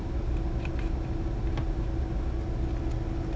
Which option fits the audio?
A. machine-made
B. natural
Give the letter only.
B